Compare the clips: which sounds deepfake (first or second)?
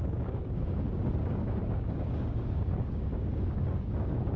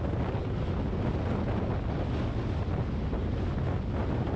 first